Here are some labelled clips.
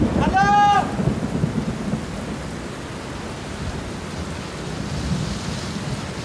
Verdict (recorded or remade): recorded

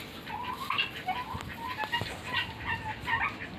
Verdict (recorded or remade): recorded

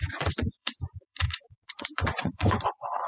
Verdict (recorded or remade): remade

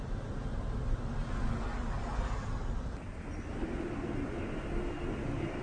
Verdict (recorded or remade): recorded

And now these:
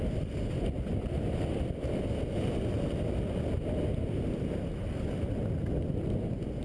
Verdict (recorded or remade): recorded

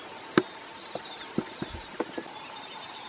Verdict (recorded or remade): recorded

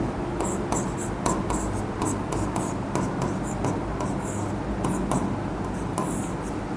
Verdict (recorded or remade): recorded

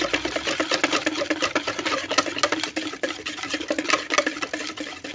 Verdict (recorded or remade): recorded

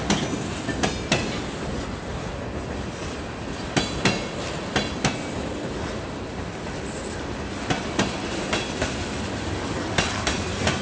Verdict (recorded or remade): recorded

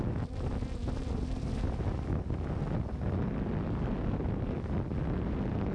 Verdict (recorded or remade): recorded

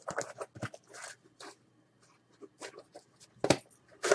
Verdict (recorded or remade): recorded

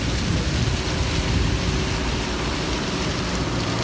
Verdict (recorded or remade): recorded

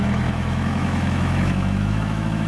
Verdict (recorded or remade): remade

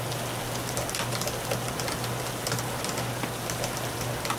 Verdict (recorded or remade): recorded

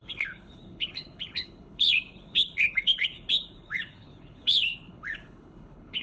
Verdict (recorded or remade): remade